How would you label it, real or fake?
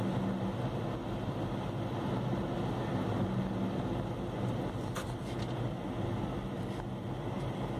real